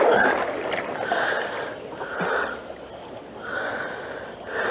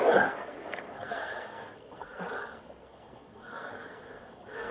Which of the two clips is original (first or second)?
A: first